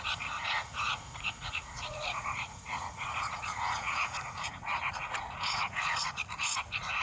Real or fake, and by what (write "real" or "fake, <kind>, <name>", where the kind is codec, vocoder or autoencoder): fake, vocoder, Vocos